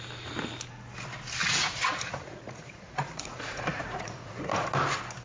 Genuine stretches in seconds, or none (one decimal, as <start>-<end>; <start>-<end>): 0.0-1.4; 4.5-5.2